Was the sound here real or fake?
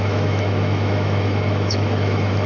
fake